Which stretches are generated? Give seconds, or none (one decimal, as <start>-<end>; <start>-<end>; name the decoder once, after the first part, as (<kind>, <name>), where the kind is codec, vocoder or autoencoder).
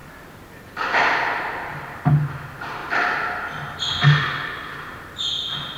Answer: 0.0-2.0 (vocoder, BigVGAN v2)